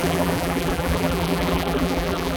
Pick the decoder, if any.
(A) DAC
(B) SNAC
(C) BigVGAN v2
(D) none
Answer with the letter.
C